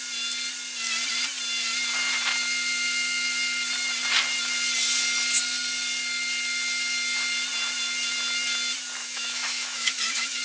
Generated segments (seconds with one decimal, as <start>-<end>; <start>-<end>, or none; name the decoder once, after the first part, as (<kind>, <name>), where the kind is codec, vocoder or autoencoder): 9.0-10.4 (autoencoder, DAC-VAE)